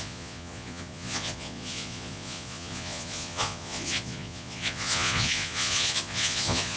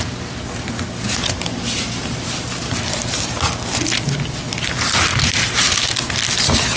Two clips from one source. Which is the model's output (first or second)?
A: first